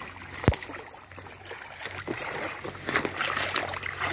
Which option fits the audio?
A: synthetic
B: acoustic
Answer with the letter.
B